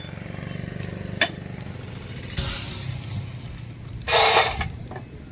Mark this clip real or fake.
real